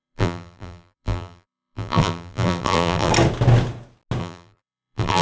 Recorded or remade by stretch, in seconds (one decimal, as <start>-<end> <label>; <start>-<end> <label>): 0.0-3.1 remade; 3.1-4.2 recorded; 4.2-5.2 remade